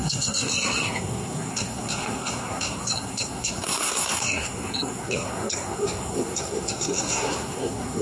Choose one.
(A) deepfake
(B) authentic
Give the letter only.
A